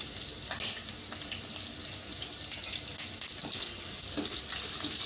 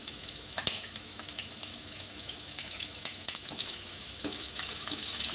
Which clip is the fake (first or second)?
second